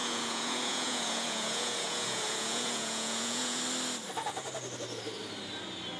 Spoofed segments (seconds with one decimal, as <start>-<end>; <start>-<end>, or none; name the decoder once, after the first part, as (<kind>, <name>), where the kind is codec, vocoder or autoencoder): 0.0-3.6 (vocoder, Vocos)